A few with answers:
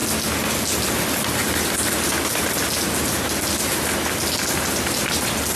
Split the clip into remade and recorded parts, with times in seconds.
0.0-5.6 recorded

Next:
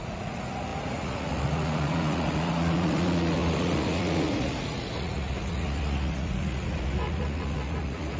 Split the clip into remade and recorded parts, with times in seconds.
0.0-8.2 remade